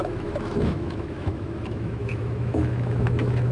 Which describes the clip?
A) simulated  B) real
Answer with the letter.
A